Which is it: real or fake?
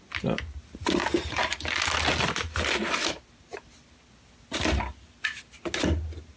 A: real